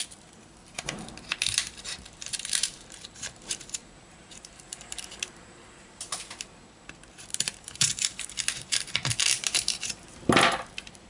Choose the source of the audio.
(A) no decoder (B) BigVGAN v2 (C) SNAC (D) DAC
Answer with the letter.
B